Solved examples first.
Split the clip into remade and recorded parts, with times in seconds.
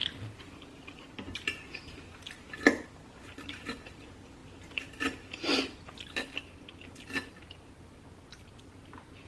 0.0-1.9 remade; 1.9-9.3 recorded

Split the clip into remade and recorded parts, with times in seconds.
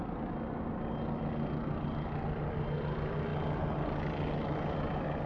0.0-5.3 recorded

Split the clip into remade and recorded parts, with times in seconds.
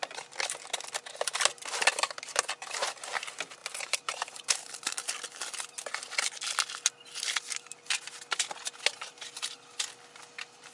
0.0-3.6 recorded; 3.6-5.1 remade; 5.1-10.7 recorded